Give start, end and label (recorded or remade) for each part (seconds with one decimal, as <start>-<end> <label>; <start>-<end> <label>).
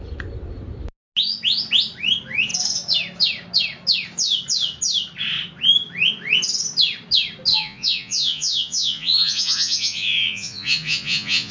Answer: 0.0-7.5 recorded; 7.5-11.5 remade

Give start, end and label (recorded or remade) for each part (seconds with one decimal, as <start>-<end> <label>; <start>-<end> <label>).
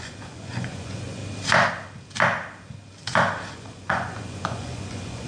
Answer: 0.0-1.2 remade; 1.2-3.5 recorded; 3.5-5.3 remade